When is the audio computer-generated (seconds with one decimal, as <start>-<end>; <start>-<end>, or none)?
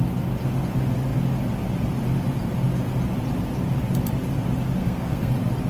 4.8-5.3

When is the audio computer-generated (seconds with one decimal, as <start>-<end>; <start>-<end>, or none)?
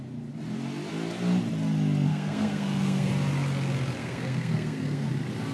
2.1-3.1; 4.0-5.1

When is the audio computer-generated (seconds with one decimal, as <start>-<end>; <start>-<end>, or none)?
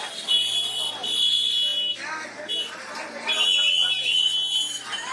none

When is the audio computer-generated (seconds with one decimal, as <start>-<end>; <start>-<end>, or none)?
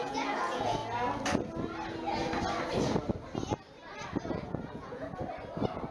0.0-0.8; 4.3-5.1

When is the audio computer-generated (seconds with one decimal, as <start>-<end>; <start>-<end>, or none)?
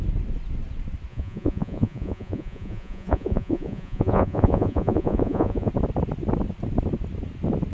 1.1-5.7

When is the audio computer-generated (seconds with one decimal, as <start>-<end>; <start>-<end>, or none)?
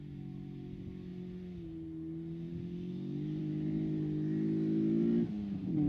none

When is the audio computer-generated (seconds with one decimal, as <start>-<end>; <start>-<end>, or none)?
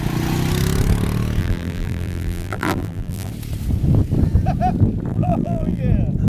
1.4-3.3; 5.1-5.8